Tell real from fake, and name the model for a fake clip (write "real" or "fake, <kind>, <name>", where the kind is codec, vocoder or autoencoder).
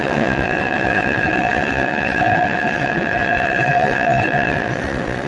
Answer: fake, vocoder, WaveNeXt